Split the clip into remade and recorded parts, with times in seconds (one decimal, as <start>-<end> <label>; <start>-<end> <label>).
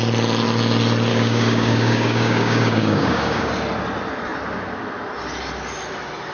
0.0-1.1 recorded; 1.1-3.5 remade; 3.5-6.3 recorded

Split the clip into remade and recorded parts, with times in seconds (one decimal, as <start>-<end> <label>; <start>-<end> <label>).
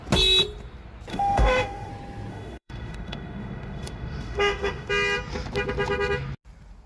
0.0-1.1 recorded; 1.1-1.9 remade; 1.9-2.3 recorded; 2.3-4.9 remade; 4.9-6.9 recorded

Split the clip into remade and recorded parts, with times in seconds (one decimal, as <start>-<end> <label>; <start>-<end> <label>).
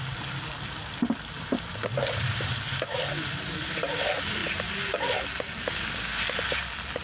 0.0-7.0 recorded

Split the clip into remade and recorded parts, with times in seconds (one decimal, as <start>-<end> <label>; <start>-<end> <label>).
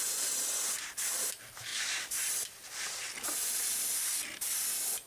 0.0-5.1 recorded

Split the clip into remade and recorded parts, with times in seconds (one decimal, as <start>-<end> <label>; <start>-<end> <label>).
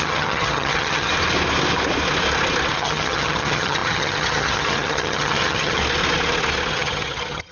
0.0-1.1 remade; 1.1-2.7 recorded; 2.7-5.8 remade; 5.8-6.7 recorded; 6.7-7.5 remade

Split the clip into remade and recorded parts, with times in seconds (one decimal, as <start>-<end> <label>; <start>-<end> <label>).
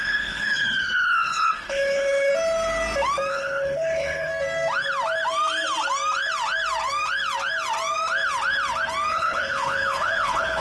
0.0-2.3 remade; 2.3-3.3 recorded; 3.3-4.3 remade; 4.3-9.1 recorded; 9.1-10.6 remade